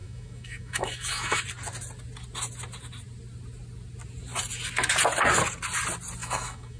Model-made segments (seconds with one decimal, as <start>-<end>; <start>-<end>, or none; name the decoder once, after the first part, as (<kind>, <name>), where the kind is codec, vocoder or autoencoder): 0.0-1.4 (autoencoder, DAC-VAE); 6.2-6.8

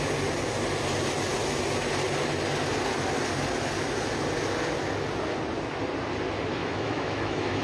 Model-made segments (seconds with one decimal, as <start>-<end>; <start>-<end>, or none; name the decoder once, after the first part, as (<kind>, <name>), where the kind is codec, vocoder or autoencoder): 6.6-7.6 (autoencoder, DAC-VAE)

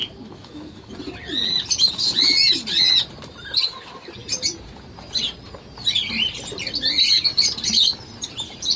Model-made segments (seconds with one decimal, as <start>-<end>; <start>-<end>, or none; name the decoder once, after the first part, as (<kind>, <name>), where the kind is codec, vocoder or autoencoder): 0.0-0.9 (autoencoder, DAC-VAE)

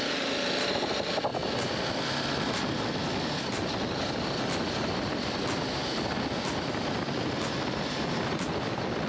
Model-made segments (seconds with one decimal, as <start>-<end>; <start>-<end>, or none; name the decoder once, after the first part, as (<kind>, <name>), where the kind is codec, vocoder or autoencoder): none

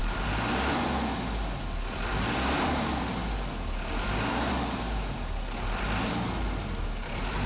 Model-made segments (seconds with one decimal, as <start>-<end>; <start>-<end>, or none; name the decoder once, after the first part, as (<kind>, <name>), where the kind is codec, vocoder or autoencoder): none

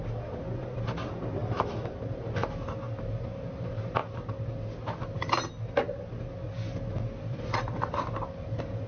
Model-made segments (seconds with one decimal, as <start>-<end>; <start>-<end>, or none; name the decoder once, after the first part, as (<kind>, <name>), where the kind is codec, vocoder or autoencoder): 1.4-1.9 (autoencoder, DAC-VAE)

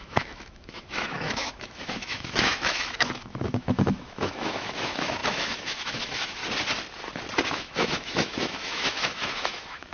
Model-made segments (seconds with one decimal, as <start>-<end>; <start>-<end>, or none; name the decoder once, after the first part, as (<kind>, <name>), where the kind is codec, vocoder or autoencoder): 0.0-6.4 (autoencoder, DAC-VAE); 7.5-9.9

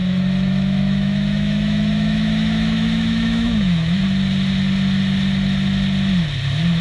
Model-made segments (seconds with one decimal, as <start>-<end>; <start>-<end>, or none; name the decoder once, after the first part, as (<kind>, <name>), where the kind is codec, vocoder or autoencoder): 0.0-4.0 (autoencoder, DAC-VAE)